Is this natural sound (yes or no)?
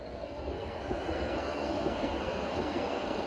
no